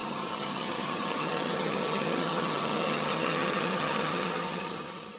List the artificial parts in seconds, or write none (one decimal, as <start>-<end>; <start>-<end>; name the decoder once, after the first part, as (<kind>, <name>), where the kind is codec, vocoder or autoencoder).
0.0-5.2 (vocoder, HiFi-GAN)